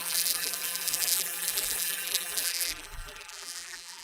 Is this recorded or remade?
remade